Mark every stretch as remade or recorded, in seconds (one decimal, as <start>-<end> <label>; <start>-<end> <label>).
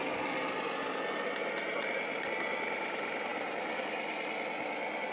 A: 0.0-5.1 recorded